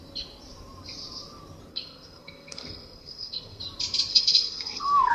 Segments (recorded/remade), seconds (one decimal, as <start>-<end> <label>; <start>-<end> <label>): 0.0-1.7 recorded; 1.7-3.6 remade; 3.6-4.1 recorded; 4.1-5.1 remade